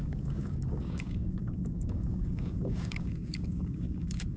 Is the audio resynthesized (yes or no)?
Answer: yes